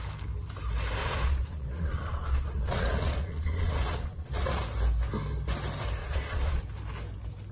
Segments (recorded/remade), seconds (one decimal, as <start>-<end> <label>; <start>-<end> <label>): 0.0-1.0 recorded; 1.0-4.6 remade; 4.6-6.0 recorded; 6.0-6.6 remade; 6.6-7.5 recorded